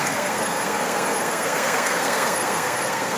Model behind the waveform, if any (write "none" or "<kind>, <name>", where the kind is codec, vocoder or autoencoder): codec, SNAC